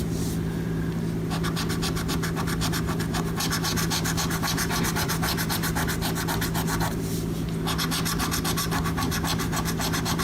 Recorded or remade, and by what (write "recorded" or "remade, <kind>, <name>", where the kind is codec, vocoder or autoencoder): recorded